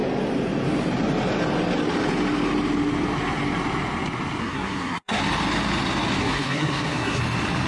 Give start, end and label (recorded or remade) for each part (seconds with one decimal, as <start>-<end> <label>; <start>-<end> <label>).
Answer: 0.0-4.4 recorded; 4.4-5.2 remade; 5.2-6.2 recorded; 6.2-7.2 remade; 7.2-7.7 recorded